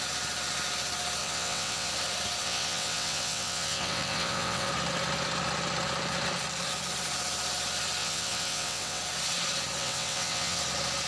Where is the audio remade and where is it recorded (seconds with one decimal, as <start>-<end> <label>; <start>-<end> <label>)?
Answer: 0.0-1.2 recorded; 1.2-1.9 remade; 1.9-2.4 recorded; 2.4-4.7 remade; 4.7-8.0 recorded; 8.0-9.0 remade; 9.0-9.8 recorded; 9.8-10.6 remade; 10.6-11.1 recorded

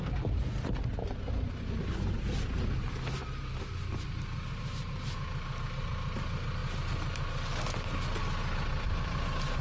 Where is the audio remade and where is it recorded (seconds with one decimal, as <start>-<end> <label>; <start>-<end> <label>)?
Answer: 0.0-9.6 recorded

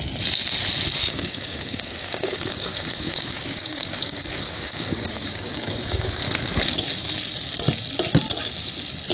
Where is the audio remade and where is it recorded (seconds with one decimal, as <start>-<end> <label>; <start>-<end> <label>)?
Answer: 0.0-1.0 recorded; 1.0-6.2 remade; 6.2-9.1 recorded

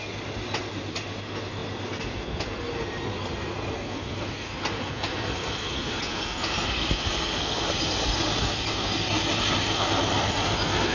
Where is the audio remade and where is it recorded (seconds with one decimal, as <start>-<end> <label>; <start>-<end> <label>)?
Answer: 0.0-10.9 recorded

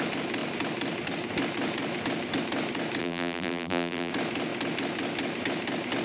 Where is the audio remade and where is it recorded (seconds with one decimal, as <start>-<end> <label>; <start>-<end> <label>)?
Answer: 0.0-3.0 recorded; 3.0-4.1 remade; 4.1-6.0 recorded

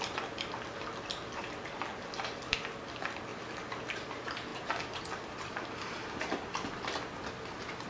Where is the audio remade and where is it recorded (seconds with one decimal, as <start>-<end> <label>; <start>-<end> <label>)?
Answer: 0.0-7.9 recorded